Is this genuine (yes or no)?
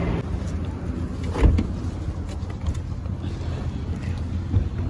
yes